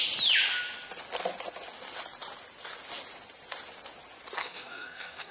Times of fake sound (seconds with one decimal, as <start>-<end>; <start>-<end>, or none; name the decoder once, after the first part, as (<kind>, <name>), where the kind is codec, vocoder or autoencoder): 4.4-5.3 (codec, SNAC)